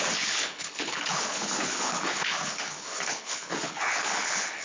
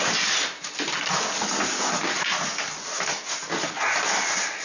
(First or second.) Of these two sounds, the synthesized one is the first